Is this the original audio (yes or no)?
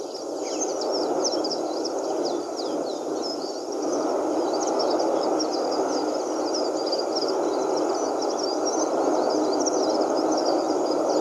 yes